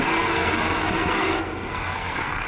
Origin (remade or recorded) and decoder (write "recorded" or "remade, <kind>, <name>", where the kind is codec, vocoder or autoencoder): remade, codec, SNAC